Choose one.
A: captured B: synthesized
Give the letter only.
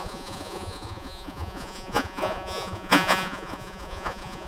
B